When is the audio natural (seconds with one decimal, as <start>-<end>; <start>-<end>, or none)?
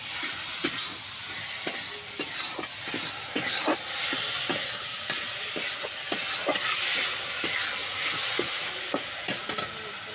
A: 0.0-7.8; 9.1-10.1